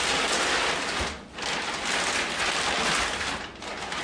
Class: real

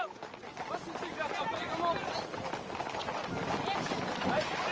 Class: real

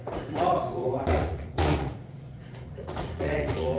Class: fake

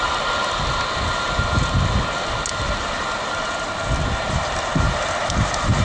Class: real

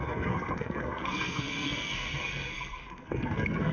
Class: fake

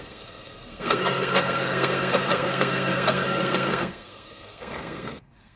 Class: fake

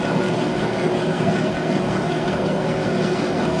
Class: fake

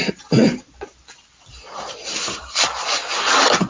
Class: fake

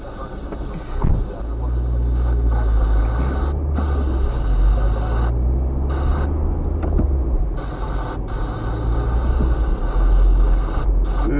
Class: real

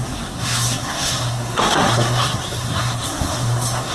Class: fake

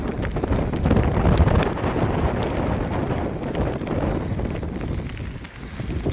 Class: real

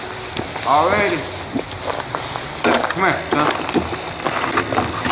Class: real